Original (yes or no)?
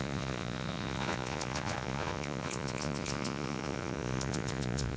no